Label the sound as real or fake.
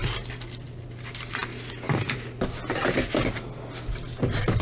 real